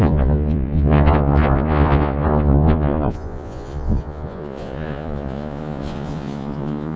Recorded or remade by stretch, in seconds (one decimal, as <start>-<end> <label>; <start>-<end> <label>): 0.0-7.0 remade